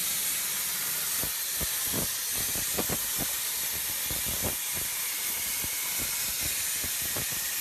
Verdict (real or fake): fake